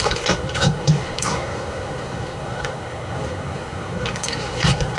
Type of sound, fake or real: fake